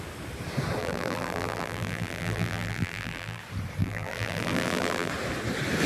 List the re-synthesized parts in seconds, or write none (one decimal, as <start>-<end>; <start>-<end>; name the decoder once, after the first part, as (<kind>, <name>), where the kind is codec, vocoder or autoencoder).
0.8-3.4 (vocoder, BigVGAN v2); 3.8-5.1